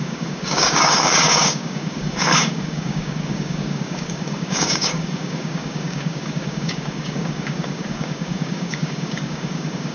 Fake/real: fake